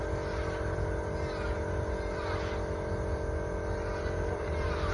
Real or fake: real